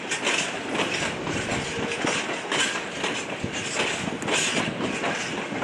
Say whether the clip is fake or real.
real